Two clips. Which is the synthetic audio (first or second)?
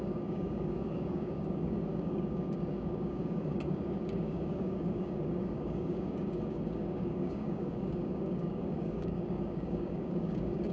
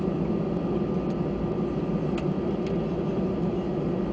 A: first